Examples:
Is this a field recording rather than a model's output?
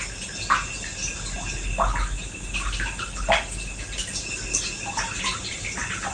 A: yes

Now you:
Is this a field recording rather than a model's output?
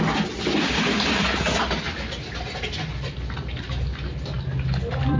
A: yes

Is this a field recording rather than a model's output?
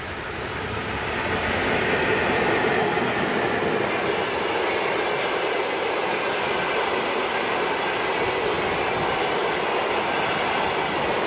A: yes